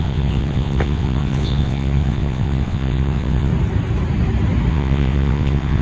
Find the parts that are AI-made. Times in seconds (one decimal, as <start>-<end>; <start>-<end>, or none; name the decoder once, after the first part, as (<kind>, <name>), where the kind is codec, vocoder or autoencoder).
0.0-3.5 (vocoder, WaveNeXt); 4.7-5.8